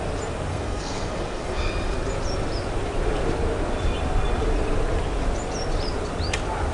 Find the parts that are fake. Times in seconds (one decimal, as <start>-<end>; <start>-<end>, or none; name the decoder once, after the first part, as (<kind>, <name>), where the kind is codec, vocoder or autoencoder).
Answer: 0.5-1.7 (codec, SNAC)